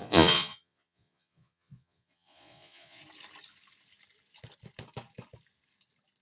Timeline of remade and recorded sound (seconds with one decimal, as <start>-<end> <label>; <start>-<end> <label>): 0.0-3.0 remade; 3.0-6.2 recorded